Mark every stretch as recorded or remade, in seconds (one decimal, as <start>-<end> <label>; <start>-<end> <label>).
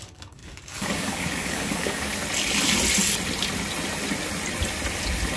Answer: 0.0-2.1 remade; 2.1-5.4 recorded